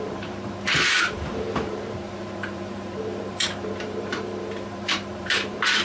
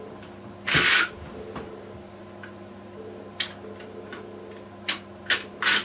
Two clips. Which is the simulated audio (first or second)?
first